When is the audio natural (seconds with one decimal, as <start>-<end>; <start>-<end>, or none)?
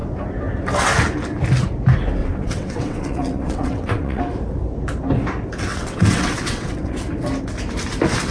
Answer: 0.0-2.2; 4.2-5.7; 7.0-8.3